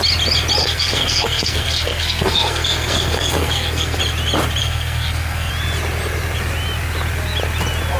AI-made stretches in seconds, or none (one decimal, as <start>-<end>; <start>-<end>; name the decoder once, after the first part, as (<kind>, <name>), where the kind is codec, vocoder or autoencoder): 0.6-4.0 (codec, SNAC); 4.6-5.5